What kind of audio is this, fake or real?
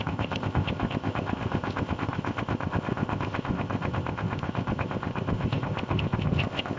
fake